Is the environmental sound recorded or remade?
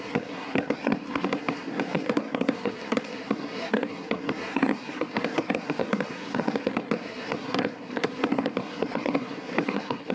remade